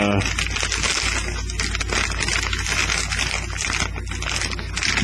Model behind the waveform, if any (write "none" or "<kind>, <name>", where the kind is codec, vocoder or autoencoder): none